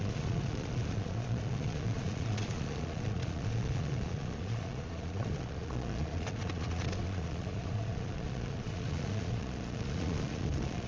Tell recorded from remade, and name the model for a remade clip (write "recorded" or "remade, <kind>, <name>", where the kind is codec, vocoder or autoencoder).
remade, vocoder, Vocos